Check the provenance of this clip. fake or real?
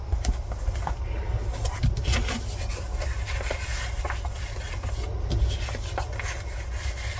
real